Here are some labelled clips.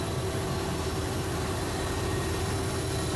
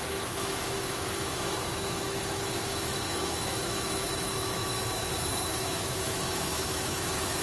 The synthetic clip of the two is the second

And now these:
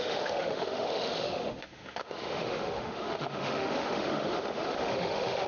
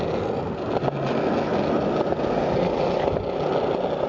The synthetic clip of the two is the first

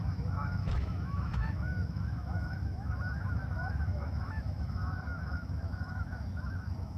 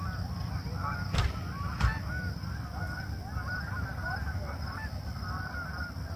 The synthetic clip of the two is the first